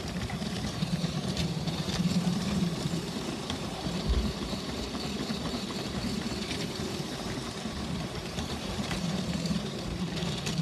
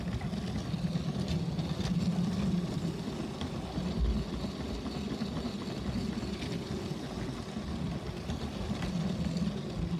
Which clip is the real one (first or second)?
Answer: second